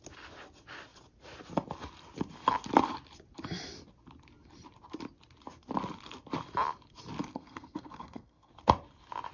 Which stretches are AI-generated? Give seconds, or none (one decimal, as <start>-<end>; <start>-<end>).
7.3-8.5